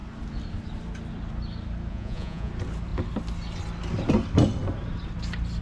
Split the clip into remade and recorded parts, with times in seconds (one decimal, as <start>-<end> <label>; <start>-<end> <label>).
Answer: 0.0-1.9 recorded; 1.9-2.5 remade; 2.5-5.6 recorded